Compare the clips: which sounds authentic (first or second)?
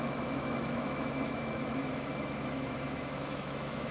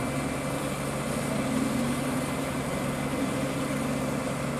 second